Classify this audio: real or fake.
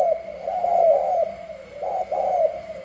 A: real